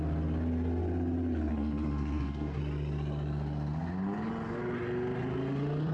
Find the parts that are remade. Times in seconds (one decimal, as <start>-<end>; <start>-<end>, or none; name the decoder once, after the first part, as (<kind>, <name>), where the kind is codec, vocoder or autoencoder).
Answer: 1.5-2.6 (codec, SNAC)